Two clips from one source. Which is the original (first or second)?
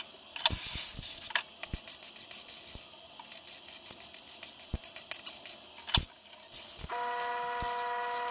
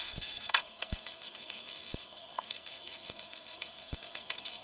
first